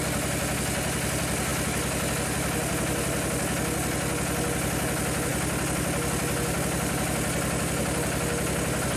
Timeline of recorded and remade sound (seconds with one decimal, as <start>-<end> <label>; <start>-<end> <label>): 0.0-9.0 recorded